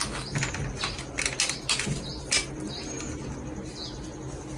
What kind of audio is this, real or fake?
real